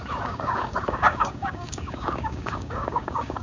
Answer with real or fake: fake